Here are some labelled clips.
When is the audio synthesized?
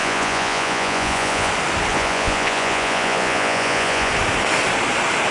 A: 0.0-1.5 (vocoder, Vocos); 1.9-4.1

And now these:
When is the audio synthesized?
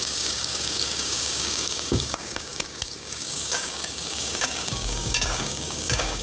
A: 0.0-6.2 (codec, DAC)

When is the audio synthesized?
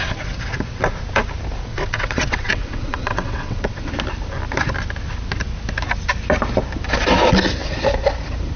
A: 1.7-3.9 (vocoder, WaveNeXt)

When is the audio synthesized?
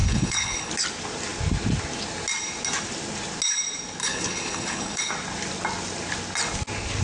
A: 0.0-0.7 (codec, HILCodec); 4.0-5.1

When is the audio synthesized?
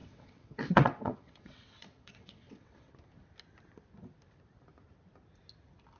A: 0.0-2.9 (vocoder, WaveNeXt)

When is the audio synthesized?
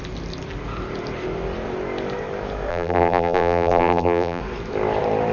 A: 2.7-4.4 (vocoder, BigVGAN v2)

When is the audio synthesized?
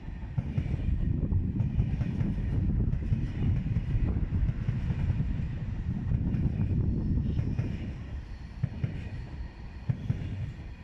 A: none